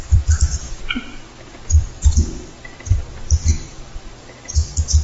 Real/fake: fake